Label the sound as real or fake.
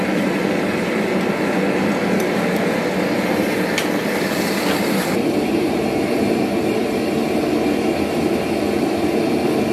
real